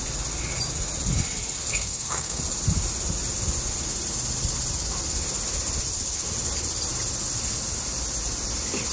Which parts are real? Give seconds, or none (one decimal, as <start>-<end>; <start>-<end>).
0.0-1.7; 2.4-8.9